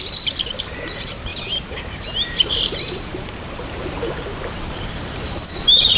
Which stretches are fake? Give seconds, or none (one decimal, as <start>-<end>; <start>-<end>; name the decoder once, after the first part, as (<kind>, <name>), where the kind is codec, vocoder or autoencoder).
0.0-6.0 (vocoder, BigVGAN v2)